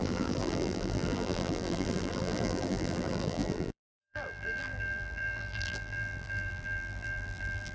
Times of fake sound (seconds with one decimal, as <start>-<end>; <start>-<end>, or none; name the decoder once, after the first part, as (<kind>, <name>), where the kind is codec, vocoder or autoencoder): 0.0-7.7 (vocoder, BigVGAN v2)